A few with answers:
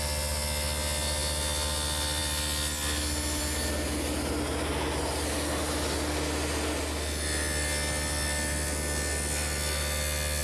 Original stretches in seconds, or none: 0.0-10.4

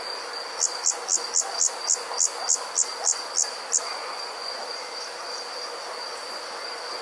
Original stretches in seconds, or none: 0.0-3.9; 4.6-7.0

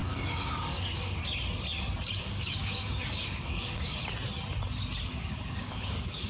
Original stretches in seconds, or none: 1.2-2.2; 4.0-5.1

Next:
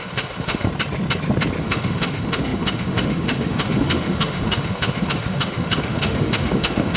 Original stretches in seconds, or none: 0.7-1.6